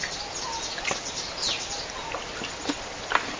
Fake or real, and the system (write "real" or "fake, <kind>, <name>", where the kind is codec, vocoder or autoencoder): real